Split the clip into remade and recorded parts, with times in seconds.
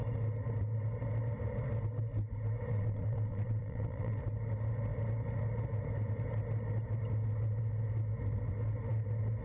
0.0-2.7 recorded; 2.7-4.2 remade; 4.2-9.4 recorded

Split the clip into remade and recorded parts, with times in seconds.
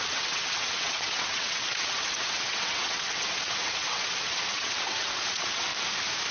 0.0-5.7 remade; 5.7-6.3 recorded